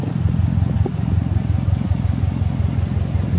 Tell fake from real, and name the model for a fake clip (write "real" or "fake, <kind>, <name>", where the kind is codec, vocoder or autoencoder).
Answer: real